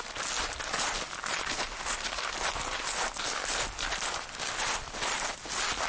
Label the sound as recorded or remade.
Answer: recorded